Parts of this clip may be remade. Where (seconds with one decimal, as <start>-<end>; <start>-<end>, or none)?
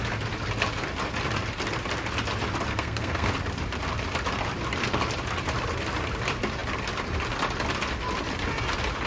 2.7-3.3